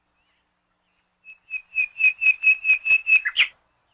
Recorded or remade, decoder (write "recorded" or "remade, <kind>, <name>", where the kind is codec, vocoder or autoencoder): recorded